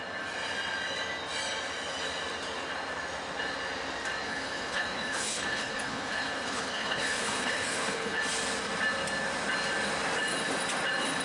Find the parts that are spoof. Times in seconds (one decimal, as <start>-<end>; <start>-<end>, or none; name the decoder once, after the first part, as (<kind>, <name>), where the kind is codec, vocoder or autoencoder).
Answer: 4.2-8.2 (codec, HILCodec)